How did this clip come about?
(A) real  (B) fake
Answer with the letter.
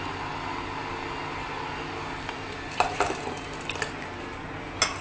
A